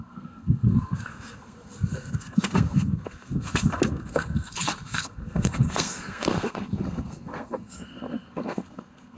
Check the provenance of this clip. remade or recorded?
remade